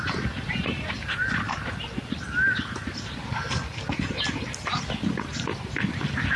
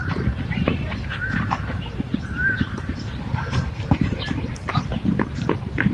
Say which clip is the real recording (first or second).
first